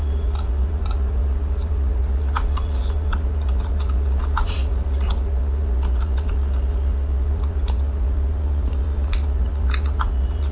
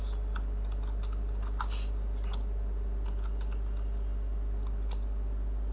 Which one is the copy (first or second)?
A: first